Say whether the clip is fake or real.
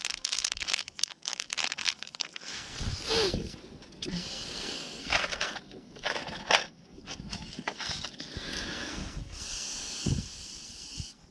fake